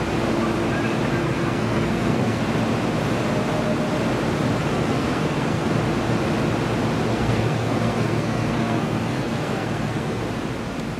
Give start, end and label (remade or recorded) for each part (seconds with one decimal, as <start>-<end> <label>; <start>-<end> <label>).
0.0-1.2 recorded; 1.2-2.4 remade; 2.4-4.7 recorded; 4.7-5.7 remade; 5.7-7.1 recorded; 7.1-10.2 remade; 10.2-11.0 recorded